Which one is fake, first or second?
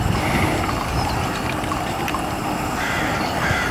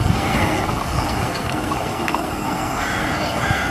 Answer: second